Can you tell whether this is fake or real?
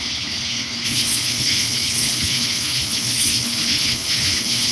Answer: fake